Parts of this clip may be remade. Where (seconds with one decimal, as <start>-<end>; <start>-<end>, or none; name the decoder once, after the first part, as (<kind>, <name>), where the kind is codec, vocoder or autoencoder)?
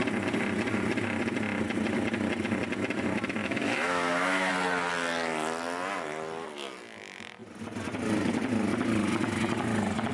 3.4-4.5 (autoencoder, DAC-VAE)